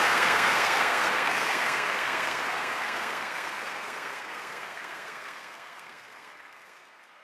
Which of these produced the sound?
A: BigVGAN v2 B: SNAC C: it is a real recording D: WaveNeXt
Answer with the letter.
B